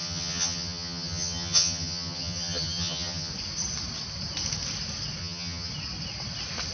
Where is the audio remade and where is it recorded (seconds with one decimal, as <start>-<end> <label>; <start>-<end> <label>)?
0.0-3.3 remade; 3.3-5.2 recorded; 5.2-5.7 remade; 5.7-6.7 recorded